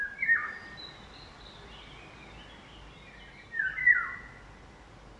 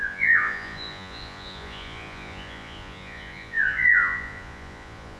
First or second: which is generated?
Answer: second